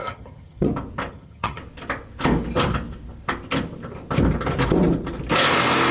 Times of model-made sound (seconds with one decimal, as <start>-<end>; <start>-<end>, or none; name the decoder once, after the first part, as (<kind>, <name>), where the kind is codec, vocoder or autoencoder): 0.0-0.7 (vocoder, HiFi-GAN); 1.1-1.6